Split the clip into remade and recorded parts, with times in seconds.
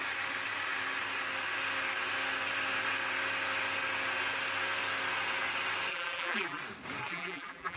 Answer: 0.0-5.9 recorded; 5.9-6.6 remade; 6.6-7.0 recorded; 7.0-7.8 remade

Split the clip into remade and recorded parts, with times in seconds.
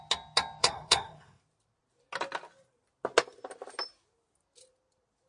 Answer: 0.0-0.6 recorded; 0.6-1.4 remade; 1.4-5.3 recorded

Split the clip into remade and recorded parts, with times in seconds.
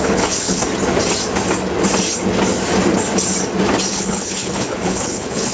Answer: 0.0-0.6 remade; 0.6-3.9 recorded; 3.9-5.5 remade